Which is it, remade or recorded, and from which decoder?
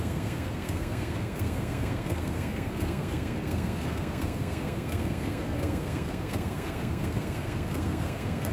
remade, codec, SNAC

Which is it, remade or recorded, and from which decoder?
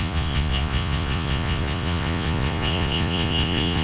remade, vocoder, Vocos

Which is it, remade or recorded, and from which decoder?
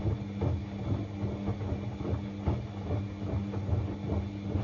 recorded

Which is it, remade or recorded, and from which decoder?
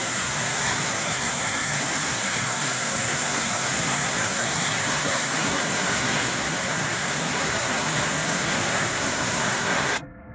remade, codec, SNAC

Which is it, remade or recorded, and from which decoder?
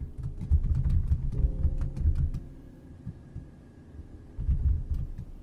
recorded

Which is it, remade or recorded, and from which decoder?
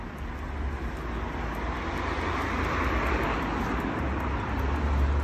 recorded